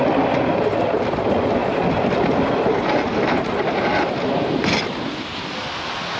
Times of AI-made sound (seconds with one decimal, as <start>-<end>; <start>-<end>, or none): none